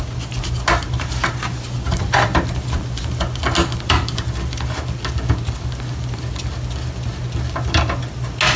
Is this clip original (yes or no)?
yes